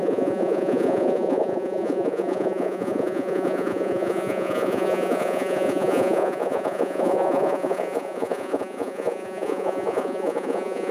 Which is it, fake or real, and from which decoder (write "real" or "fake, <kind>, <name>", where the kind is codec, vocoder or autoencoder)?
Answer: fake, vocoder, Vocos